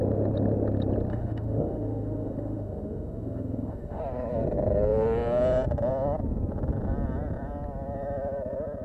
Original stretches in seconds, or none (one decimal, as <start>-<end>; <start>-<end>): 0.0-1.1; 4.0-8.8